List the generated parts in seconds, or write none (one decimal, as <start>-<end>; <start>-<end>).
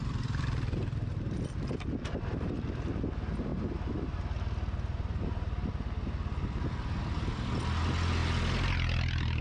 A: none